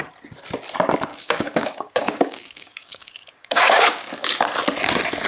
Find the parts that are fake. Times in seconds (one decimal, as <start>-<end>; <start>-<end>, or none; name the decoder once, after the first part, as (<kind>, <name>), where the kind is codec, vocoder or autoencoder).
1.1-4.3 (codec, DAC)